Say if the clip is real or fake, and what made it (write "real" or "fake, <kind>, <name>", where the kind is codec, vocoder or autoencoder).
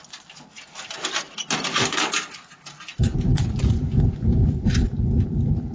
real